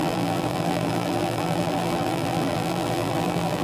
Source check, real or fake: fake